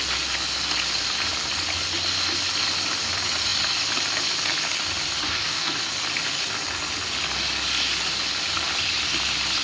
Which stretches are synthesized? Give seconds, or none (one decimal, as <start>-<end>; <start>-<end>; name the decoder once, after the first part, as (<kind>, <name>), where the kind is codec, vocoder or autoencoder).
5.2-5.8 (codec, DAC)